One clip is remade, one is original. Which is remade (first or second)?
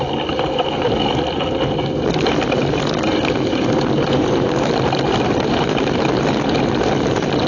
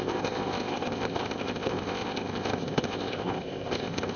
second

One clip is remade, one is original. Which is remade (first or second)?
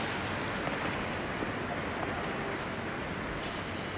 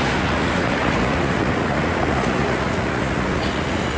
second